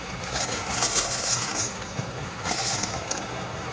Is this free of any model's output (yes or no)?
no